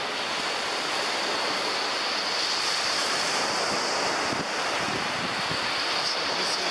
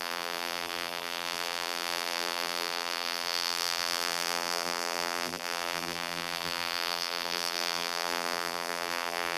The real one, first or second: first